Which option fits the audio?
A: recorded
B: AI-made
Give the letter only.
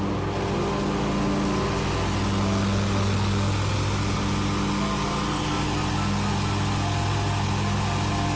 A